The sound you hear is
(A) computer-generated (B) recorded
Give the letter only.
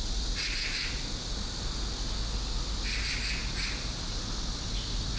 B